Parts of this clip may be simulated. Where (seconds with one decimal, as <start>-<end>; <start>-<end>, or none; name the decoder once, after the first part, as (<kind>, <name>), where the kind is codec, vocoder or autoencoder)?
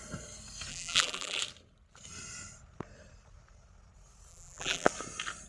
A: 0.7-1.4 (vocoder, BigVGAN v2); 4.3-4.9